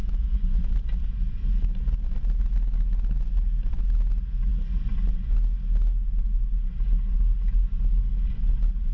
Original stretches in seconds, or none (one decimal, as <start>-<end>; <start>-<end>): 0.6-8.9